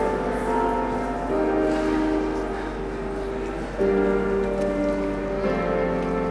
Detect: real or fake real